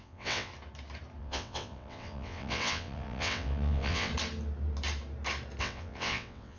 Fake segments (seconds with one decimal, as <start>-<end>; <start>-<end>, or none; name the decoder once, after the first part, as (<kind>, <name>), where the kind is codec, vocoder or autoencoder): 0.0-0.5 (vocoder, WaveNeXt); 1.2-4.1; 5.6-6.6